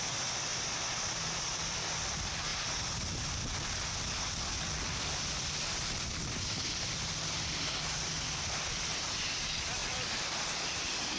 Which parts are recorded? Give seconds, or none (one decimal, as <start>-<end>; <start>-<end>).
0.5-1.4